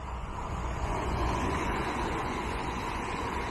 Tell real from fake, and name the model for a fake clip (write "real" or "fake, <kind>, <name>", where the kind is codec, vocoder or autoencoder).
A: fake, vocoder, Vocos